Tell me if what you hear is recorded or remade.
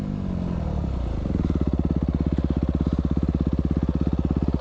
recorded